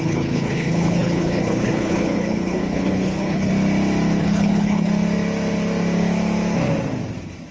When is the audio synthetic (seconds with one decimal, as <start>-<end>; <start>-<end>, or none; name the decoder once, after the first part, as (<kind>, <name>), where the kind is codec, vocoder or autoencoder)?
0.0-3.5 (codec, HILCodec); 4.2-4.9